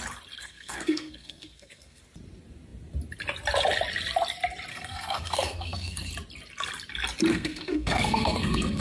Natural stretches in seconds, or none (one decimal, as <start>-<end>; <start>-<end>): 0.0-0.4; 2.0-4.7; 6.1-7.3